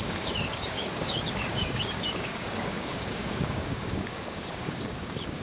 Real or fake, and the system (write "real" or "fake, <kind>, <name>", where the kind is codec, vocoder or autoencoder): fake, codec, DAC